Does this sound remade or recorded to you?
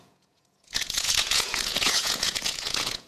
remade